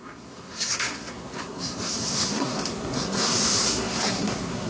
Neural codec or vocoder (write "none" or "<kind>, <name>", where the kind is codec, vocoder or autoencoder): codec, SNAC